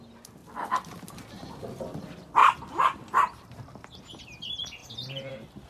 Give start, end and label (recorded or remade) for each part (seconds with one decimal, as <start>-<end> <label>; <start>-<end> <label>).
0.0-5.7 recorded